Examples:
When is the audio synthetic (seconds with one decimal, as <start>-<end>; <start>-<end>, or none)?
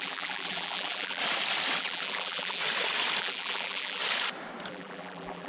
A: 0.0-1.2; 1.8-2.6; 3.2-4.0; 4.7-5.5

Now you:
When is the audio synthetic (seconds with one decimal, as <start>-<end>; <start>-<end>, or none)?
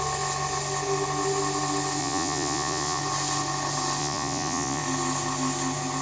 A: 2.0-3.0; 4.0-4.8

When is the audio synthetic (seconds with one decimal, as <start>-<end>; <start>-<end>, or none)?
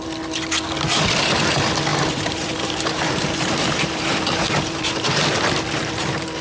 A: 1.9-4.8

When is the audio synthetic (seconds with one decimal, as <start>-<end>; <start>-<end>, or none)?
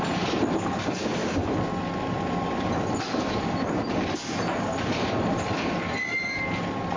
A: none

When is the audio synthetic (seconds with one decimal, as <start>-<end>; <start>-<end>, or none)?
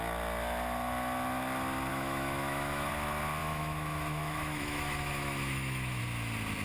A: 1.9-2.9; 3.4-6.0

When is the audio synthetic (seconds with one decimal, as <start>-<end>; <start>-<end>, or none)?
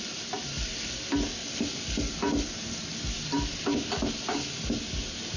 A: none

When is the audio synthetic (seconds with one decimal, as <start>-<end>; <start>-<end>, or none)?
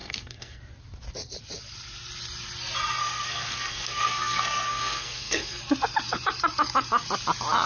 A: 0.0-0.6; 3.0-5.6